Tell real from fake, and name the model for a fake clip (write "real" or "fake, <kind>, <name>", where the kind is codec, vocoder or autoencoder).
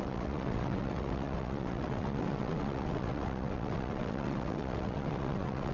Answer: fake, vocoder, WaveNeXt